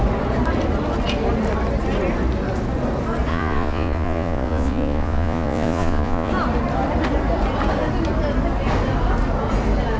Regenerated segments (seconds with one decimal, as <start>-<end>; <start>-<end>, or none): 3.3-6.3